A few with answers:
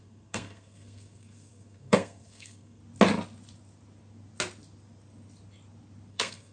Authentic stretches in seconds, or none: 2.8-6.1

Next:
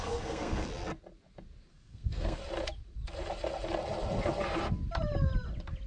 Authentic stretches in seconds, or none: 0.7-1.7; 2.4-5.9

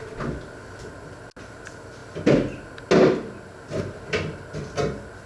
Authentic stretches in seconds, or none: 0.0-5.3

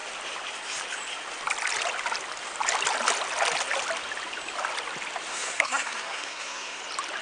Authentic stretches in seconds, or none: 0.0-5.3; 6.8-7.2

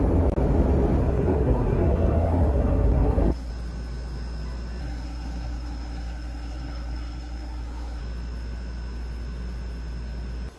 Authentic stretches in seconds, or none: 0.0-1.0; 3.5-4.8; 8.0-10.6